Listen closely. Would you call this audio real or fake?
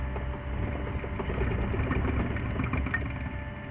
real